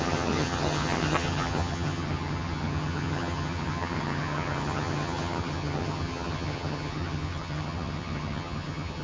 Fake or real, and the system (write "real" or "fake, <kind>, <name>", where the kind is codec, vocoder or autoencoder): fake, vocoder, HiFi-GAN